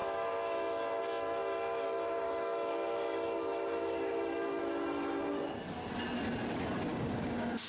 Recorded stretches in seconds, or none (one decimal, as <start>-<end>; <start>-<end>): 4.6-6.9